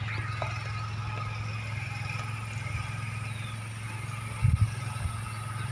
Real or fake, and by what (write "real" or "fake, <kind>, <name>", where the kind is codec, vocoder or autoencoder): real